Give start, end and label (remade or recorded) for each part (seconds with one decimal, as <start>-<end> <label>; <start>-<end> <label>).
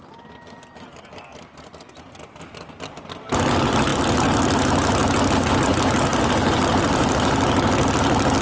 0.0-8.4 recorded